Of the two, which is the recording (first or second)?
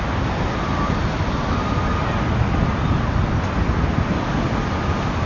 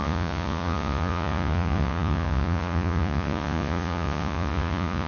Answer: first